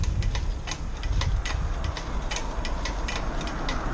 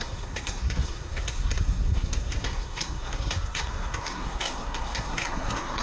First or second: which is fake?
second